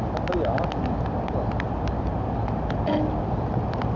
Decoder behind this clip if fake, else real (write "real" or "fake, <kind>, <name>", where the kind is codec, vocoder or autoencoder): real